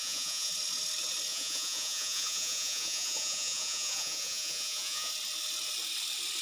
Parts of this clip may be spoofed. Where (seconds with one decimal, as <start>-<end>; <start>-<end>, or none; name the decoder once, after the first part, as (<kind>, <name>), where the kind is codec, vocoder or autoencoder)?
0.0-0.5 (vocoder, Vocos); 1.3-5.1